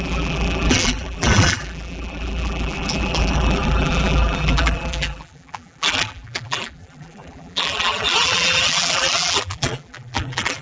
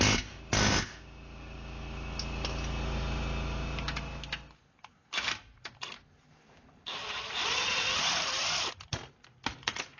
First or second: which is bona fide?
second